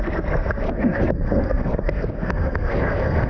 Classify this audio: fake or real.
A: fake